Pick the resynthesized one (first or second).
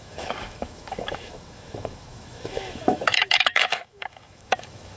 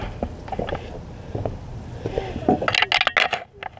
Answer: first